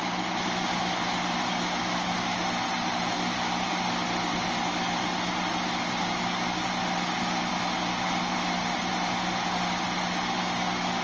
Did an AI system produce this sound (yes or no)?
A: no